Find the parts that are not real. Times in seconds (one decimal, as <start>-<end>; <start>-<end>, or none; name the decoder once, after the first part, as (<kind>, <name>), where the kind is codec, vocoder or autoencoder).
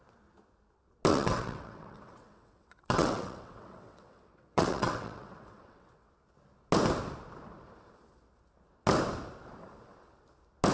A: 1.1-6.1 (vocoder, WaveNeXt)